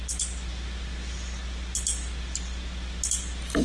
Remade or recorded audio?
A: recorded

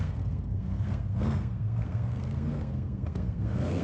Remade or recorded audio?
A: remade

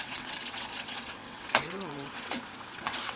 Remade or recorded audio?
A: remade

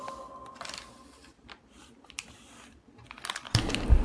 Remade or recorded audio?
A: remade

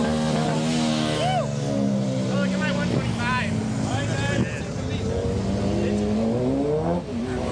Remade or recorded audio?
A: recorded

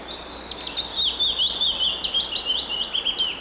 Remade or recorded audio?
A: recorded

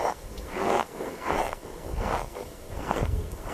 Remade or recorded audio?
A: remade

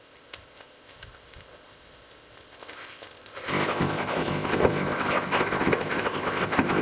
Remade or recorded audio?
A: remade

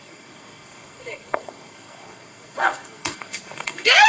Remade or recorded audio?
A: remade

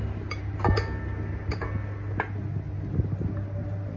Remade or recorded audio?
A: recorded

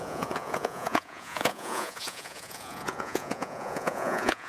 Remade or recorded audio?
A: remade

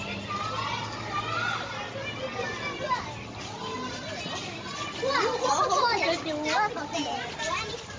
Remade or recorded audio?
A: recorded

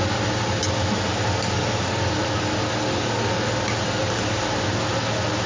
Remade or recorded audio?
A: recorded